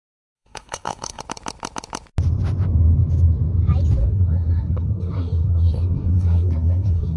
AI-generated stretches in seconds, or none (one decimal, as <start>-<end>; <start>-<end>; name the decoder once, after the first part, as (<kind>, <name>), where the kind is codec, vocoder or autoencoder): 0.0-1.2 (codec, SNAC); 4.0-7.2